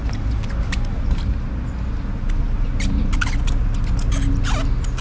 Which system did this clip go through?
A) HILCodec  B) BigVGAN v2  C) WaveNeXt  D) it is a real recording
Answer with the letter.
D